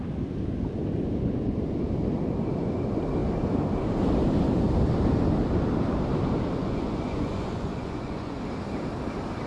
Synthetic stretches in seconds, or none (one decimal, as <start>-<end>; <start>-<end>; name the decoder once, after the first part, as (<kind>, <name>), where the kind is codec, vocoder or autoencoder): 6.6-8.4 (vocoder, Vocos)